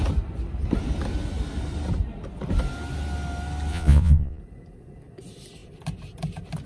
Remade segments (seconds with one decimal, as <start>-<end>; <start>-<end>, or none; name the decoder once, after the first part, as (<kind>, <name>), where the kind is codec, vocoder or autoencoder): 3.7-4.4 (vocoder, Vocos)